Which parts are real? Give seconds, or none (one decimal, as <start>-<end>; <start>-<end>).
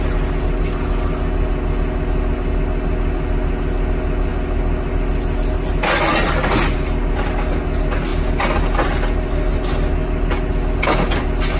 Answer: 0.0-11.6